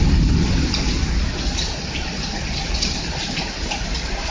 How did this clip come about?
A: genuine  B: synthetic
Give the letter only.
A